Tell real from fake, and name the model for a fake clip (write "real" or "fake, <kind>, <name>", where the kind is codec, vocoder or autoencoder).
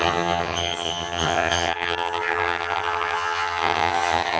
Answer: fake, vocoder, HiFi-GAN